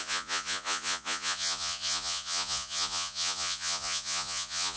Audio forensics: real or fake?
fake